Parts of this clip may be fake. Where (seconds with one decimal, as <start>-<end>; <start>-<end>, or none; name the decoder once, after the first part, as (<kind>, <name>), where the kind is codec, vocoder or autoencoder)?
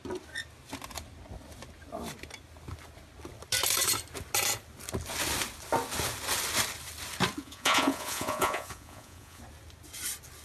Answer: 7.4-9.4 (vocoder, Vocos)